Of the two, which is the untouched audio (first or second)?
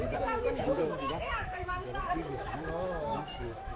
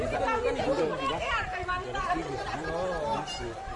second